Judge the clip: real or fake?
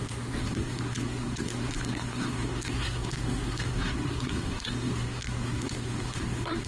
fake